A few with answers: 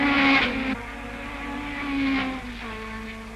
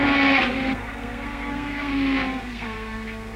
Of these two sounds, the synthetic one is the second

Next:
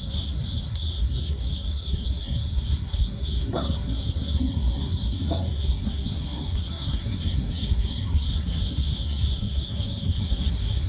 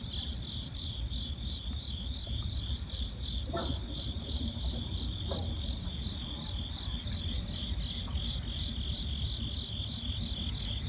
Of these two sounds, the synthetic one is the first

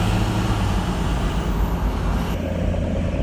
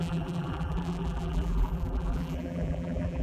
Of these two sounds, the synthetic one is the second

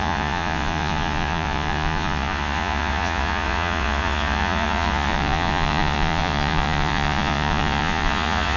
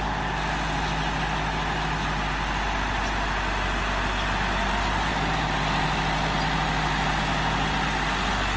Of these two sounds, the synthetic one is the first